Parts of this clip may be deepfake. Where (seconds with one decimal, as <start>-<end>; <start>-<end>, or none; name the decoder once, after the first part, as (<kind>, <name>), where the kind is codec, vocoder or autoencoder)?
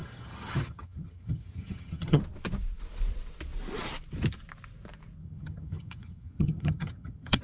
0.0-2.2 (vocoder, HiFi-GAN); 5.2-7.4